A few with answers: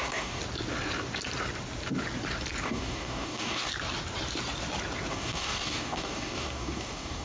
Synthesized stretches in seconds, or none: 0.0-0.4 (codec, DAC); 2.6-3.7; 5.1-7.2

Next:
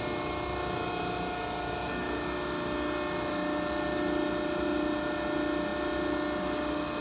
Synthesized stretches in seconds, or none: none

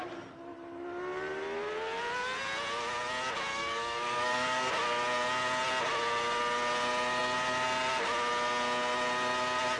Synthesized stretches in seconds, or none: 3.5-4.7 (codec, DAC)

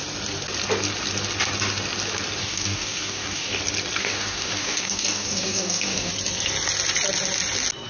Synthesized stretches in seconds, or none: 2.4-3.6 (codec, DAC); 4.0-6.1